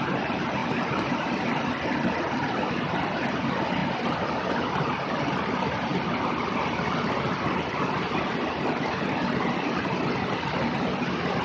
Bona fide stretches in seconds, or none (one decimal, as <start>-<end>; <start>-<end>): 0.0-11.4